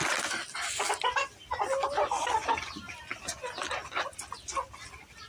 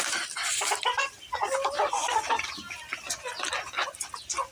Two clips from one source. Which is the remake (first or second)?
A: second